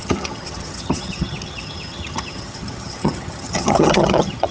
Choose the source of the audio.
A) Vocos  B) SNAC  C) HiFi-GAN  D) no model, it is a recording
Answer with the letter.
C